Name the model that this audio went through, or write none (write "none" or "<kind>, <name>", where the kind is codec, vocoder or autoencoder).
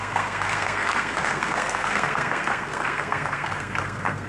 codec, SNAC